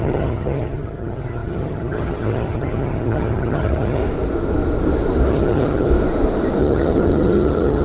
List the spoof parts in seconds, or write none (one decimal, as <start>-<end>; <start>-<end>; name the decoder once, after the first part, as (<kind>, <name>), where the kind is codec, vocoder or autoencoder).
0.0-4.0 (vocoder, HiFi-GAN); 5.3-5.9; 6.6-7.8